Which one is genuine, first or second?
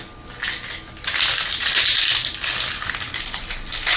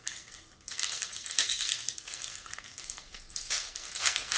first